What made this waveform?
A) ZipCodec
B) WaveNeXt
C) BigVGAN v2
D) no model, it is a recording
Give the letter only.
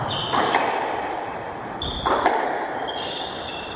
C